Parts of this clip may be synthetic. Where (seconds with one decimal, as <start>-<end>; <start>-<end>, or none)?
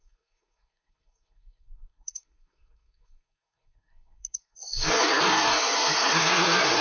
0.0-6.8